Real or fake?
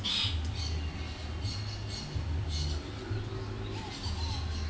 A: real